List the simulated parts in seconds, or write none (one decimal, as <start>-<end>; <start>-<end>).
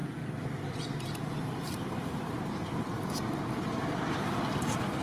0.0-0.6; 1.3-4.3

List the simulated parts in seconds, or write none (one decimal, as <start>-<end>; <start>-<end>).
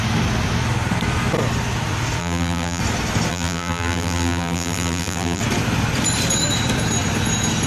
2.2-2.8; 3.3-5.4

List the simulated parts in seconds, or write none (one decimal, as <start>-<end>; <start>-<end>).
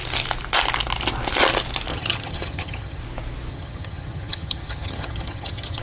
1.9-3.0; 3.5-5.8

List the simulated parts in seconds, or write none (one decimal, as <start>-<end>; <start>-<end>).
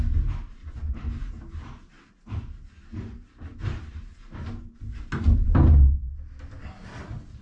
none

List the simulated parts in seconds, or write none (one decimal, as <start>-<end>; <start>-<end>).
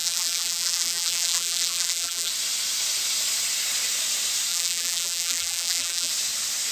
0.0-2.3; 4.5-6.1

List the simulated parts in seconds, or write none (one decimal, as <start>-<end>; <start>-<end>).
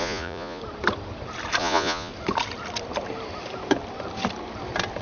0.0-0.6; 1.6-2.1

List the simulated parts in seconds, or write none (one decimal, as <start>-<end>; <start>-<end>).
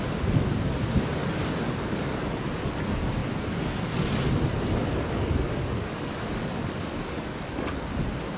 1.2-2.3; 4.8-7.8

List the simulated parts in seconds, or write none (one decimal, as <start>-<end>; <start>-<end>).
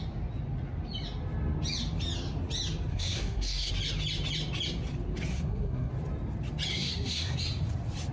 2.9-3.7; 5.3-5.9; 6.7-7.4